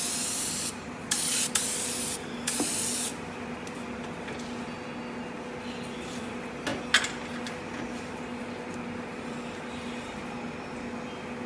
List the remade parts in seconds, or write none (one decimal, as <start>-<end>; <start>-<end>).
none